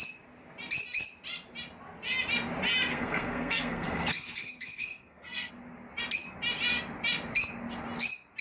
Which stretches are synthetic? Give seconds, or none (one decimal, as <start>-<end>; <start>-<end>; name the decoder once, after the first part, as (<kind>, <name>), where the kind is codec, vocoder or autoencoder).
2.9-5.5 (codec, SNAC)